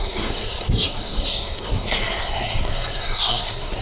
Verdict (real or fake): fake